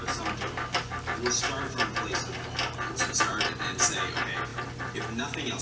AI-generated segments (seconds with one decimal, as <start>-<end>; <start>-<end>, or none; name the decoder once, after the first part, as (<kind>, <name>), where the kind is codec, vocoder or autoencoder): none